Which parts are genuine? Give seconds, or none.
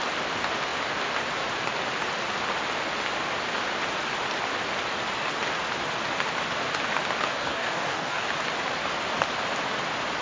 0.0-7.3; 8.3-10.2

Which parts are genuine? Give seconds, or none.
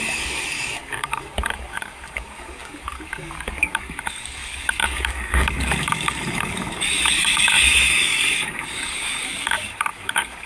none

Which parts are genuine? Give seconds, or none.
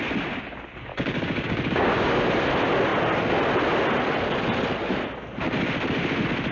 0.0-0.9; 2.3-6.5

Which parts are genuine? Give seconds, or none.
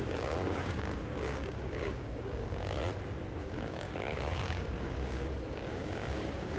2.8-3.4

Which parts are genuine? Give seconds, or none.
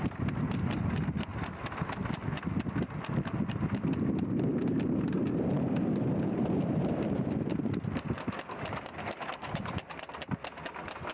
0.0-11.1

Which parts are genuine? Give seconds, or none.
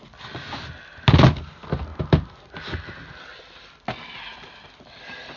0.0-5.4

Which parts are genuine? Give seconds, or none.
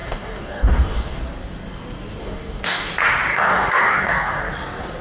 1.2-2.2; 2.9-3.3; 4.4-5.0